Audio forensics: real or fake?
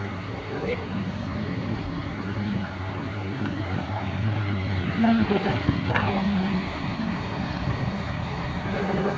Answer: fake